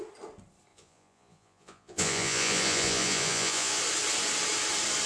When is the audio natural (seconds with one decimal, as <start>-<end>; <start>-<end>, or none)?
0.0-0.7; 3.8-5.1